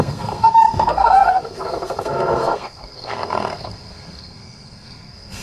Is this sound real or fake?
fake